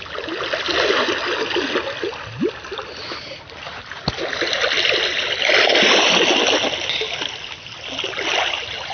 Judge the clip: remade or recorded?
recorded